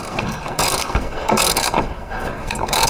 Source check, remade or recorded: remade